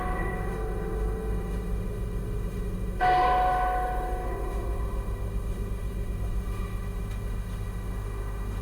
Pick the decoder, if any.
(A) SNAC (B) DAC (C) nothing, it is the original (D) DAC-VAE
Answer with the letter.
D